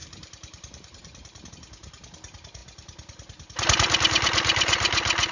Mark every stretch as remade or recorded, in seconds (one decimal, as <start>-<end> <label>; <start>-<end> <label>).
0.0-1.5 remade; 1.5-5.3 recorded